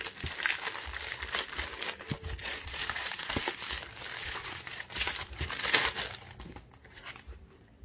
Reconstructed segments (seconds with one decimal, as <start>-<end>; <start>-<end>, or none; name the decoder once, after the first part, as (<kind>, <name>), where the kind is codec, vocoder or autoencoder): 2.4-3.3 (vocoder, Vocos); 4.2-5.1